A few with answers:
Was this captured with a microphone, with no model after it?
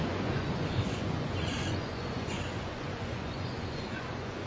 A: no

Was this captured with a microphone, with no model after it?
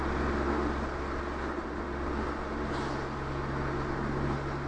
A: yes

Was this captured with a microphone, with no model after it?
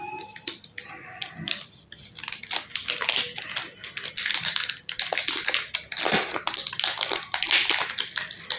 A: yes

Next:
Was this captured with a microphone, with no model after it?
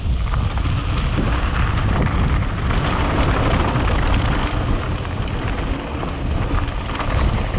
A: yes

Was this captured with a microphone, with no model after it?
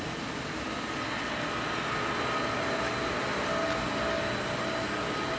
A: yes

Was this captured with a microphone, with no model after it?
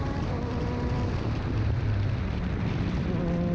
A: no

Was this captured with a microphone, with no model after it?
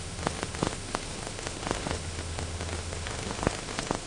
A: no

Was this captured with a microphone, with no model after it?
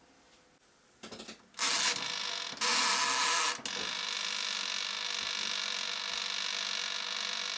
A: yes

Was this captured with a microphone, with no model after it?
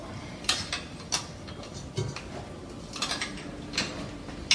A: yes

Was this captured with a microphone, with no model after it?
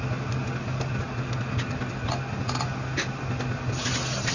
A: yes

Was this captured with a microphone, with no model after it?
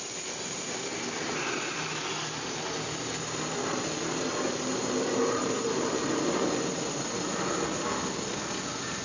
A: yes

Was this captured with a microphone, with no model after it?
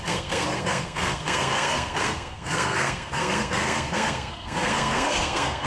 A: no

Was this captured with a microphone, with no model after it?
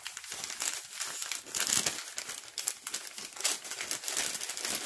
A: yes